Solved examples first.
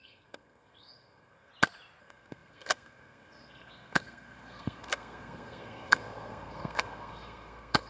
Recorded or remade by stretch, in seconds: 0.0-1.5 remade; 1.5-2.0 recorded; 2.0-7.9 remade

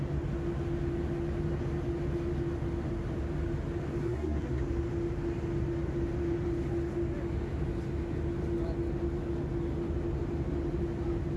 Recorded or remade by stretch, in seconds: 0.0-4.0 recorded; 4.0-4.6 remade; 4.6-11.4 recorded

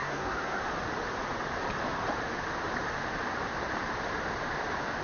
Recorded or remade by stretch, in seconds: 0.0-0.6 remade; 0.6-5.0 recorded

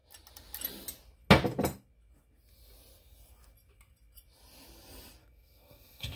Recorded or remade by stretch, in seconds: 0.0-5.2 recorded; 5.2-6.2 remade

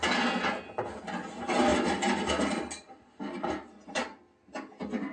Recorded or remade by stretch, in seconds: 0.0-5.1 recorded

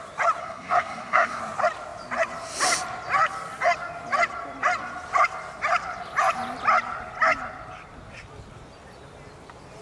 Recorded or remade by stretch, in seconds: 0.0-0.4 recorded; 0.4-1.4 remade; 1.4-9.8 recorded

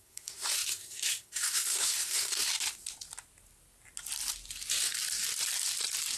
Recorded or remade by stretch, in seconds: 0.0-2.5 remade; 2.5-6.2 recorded